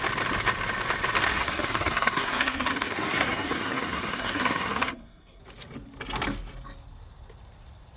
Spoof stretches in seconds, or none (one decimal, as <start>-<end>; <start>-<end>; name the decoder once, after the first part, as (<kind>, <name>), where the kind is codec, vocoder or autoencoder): 1.3-5.4 (codec, SNAC)